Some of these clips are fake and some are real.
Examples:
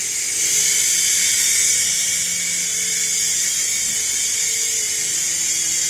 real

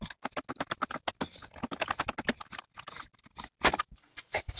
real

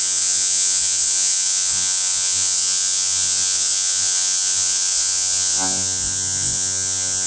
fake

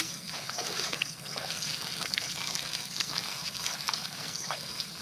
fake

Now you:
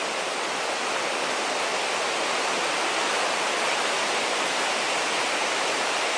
real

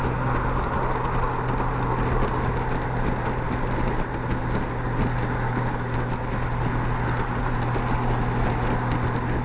real